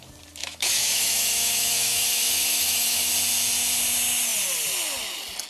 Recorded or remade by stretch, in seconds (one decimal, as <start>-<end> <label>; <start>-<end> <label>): 0.0-0.4 recorded; 0.4-3.1 remade; 3.1-5.5 recorded